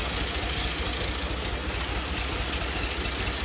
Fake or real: real